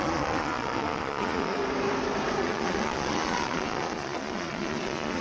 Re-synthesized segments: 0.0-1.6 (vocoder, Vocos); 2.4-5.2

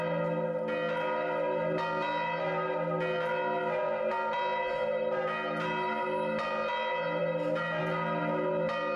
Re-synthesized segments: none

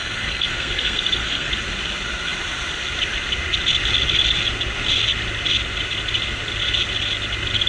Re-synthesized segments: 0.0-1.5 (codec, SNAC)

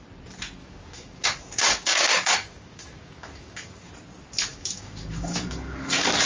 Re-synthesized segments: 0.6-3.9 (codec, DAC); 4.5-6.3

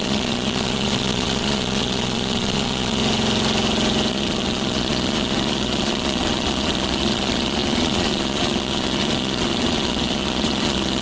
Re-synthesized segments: 0.0-3.0 (vocoder, Vocos); 4.1-11.0

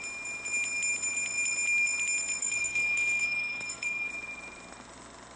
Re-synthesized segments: 2.4-4.1 (codec, DAC)

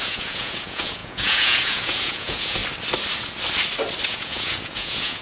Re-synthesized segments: 0.0-2.6 (vocoder, Vocos); 4.1-5.2

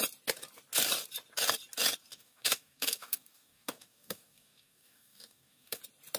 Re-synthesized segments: 2.1-5.8 (codec, DAC)